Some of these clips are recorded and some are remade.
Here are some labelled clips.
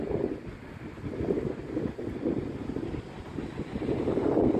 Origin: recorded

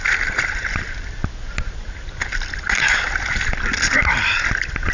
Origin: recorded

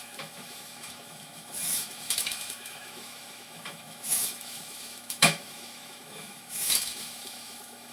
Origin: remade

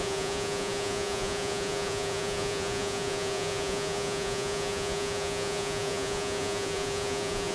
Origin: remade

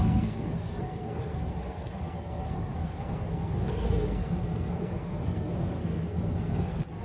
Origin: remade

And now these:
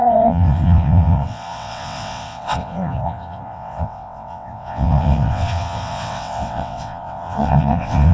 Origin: remade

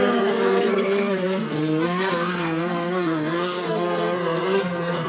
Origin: remade